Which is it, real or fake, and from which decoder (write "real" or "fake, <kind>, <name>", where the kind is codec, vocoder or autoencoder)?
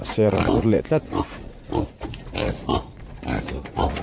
fake, vocoder, Vocos